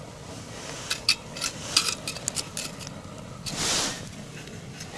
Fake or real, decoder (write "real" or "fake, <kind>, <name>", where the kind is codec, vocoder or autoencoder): real